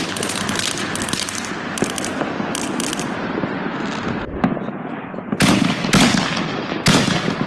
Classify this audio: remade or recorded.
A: recorded